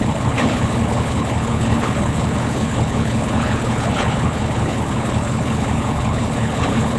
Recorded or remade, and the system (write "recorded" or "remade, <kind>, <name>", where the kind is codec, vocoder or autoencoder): remade, codec, HILCodec